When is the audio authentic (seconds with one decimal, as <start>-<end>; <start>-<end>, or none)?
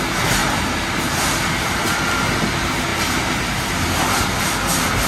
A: 0.0-0.4; 1.1-5.1